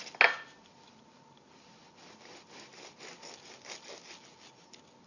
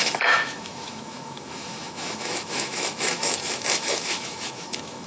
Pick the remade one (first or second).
second